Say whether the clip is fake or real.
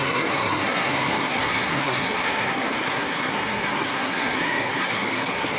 fake